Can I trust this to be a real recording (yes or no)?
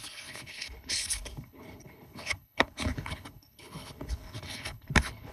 no